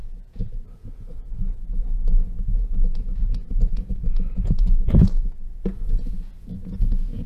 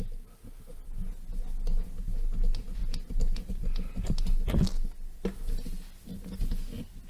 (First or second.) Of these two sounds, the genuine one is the second